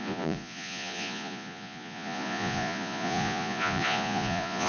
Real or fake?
fake